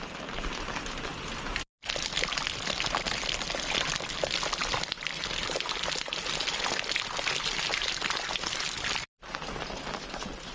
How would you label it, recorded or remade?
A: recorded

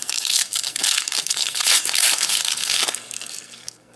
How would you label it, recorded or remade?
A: remade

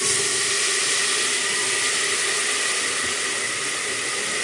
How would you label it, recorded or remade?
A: recorded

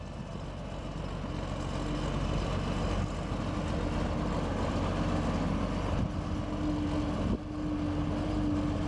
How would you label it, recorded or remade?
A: recorded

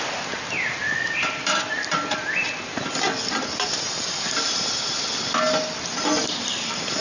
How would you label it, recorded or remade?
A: recorded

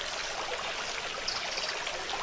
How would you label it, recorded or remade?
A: recorded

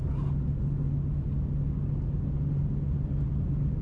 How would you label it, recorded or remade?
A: recorded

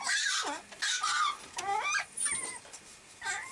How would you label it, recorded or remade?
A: recorded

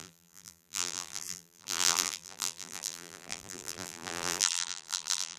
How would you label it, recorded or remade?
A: remade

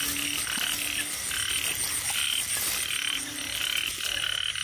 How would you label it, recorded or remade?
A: recorded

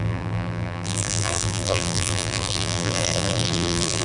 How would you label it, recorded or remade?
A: remade